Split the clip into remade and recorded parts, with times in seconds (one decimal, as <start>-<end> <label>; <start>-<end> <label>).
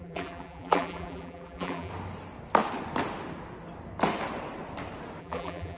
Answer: 0.0-1.9 remade; 1.9-5.2 recorded; 5.2-5.8 remade